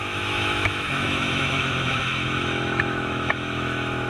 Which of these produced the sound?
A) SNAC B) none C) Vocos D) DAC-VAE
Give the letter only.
D